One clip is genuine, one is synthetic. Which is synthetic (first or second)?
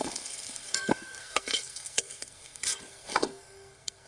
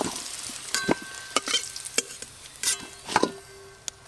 first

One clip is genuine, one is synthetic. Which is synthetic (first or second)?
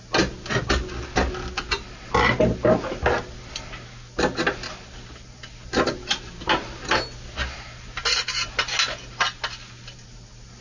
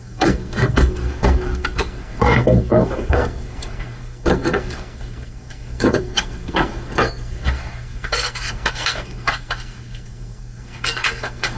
second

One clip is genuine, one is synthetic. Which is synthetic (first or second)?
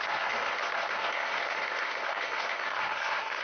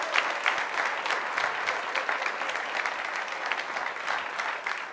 first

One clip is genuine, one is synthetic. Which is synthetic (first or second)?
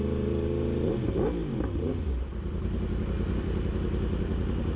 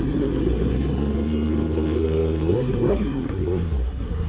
second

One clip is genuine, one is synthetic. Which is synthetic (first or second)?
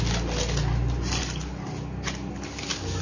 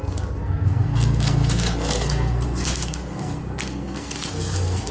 second